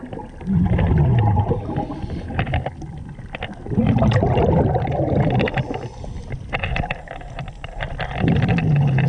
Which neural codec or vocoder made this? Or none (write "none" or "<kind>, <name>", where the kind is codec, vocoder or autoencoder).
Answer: none